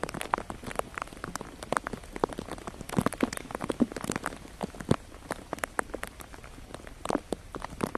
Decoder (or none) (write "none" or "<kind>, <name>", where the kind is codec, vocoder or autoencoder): none